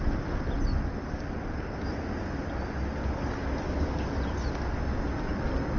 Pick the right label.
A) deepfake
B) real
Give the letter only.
B